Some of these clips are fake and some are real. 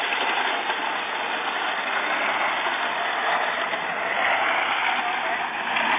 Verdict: real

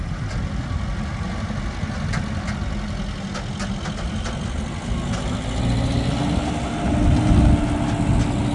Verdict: real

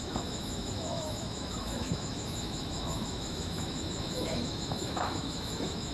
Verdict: fake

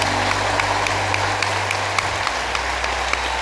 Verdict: real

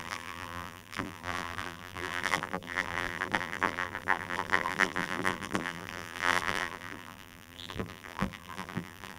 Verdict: fake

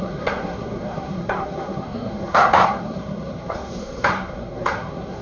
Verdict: fake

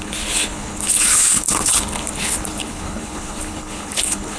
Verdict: fake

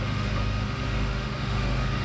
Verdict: fake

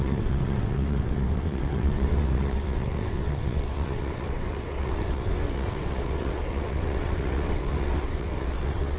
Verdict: fake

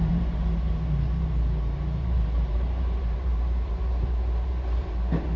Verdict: fake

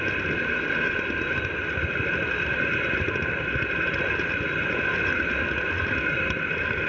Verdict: real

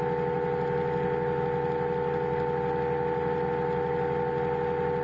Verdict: real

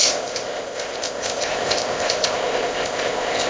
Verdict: fake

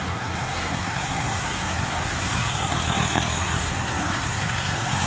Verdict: fake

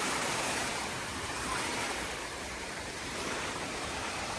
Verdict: fake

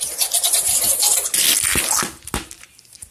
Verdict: real